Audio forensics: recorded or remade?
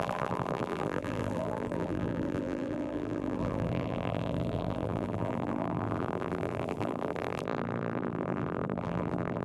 remade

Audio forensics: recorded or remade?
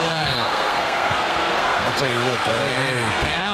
remade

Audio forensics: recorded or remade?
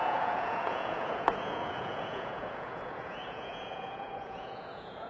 remade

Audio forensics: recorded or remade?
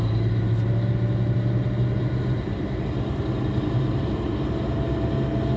recorded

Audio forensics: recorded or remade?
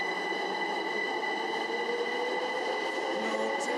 recorded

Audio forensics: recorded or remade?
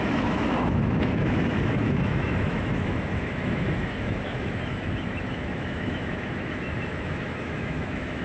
remade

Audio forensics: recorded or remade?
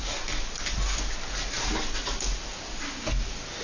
recorded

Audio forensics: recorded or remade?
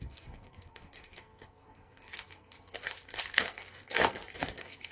remade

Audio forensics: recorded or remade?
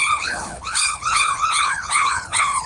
remade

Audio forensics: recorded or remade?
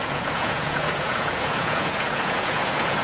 remade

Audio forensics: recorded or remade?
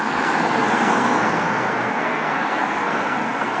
remade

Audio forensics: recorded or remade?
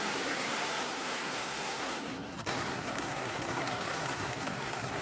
remade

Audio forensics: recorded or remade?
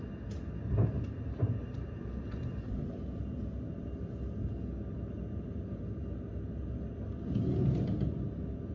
recorded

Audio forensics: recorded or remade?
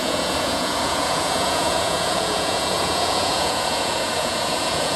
remade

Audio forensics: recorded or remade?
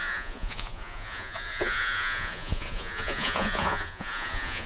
remade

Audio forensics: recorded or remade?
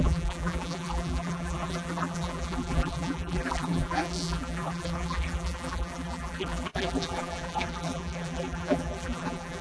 remade